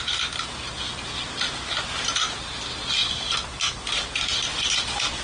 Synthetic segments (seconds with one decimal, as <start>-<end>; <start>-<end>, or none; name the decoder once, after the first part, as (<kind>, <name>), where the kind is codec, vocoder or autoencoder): none